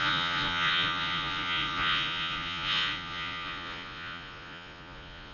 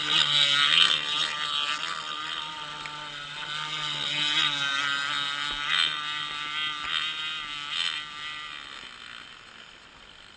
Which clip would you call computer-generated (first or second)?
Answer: first